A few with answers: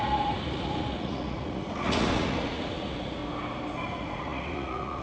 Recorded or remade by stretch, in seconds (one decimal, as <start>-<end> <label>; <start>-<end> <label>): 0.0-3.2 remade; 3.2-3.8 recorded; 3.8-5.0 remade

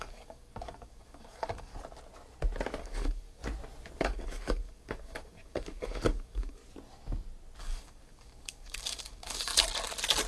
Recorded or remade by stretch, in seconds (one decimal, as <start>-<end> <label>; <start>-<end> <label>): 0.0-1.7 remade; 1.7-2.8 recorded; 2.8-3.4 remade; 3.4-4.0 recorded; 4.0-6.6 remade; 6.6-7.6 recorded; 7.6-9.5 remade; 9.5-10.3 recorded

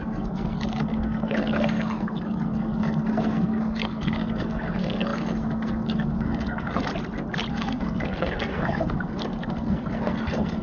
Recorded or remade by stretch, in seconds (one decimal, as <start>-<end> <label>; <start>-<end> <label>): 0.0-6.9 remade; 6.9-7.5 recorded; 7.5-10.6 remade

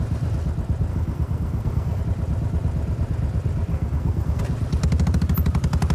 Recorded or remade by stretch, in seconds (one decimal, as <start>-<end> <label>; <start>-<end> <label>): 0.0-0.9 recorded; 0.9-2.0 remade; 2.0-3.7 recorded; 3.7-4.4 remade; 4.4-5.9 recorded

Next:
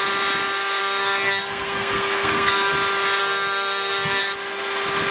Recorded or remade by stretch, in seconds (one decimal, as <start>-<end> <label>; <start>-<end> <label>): 0.0-0.8 recorded; 0.8-2.7 remade; 2.7-3.2 recorded; 3.2-4.2 remade; 4.2-5.1 recorded